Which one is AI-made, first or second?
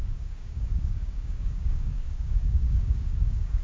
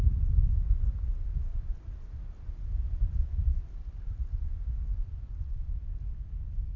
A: first